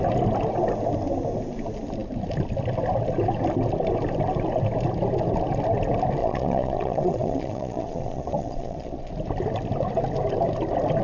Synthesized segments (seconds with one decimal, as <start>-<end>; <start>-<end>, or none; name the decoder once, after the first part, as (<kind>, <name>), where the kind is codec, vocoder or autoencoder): 6.2-9.1 (vocoder, Vocos)

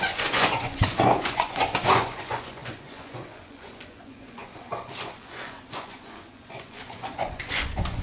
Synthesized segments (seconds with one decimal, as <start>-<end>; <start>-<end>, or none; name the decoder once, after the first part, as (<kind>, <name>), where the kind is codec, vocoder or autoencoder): 0.0-8.0 (vocoder, Vocos)